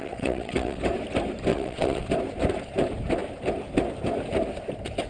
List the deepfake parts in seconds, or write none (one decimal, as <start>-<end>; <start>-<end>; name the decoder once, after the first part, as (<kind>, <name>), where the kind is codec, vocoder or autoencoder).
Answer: 0.0-0.8 (vocoder, WaveNeXt); 1.5-2.1